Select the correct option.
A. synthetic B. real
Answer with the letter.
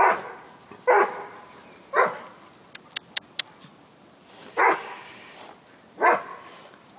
B